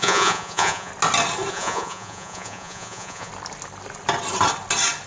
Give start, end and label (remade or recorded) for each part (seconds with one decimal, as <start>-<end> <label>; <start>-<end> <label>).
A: 0.0-0.9 remade; 0.9-1.5 recorded; 1.5-3.3 remade; 3.3-5.1 recorded